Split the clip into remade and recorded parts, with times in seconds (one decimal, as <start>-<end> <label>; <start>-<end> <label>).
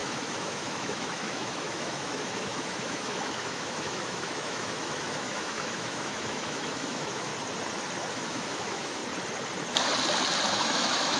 0.0-7.3 remade; 7.3-8.1 recorded; 8.1-9.0 remade; 9.0-10.5 recorded; 10.5-11.2 remade